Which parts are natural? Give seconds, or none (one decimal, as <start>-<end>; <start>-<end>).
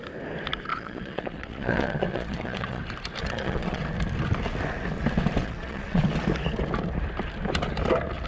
0.0-0.7; 2.8-3.2; 3.8-5.4; 6.0-8.3